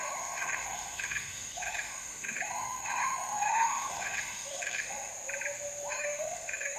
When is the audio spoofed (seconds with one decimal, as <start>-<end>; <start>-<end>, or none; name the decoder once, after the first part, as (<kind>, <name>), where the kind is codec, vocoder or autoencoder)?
0.0-5.1 (autoencoder, DAC-VAE); 5.9-6.8